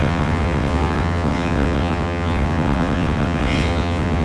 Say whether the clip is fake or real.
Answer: fake